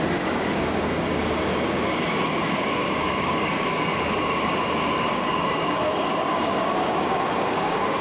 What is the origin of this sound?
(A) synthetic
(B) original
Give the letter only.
A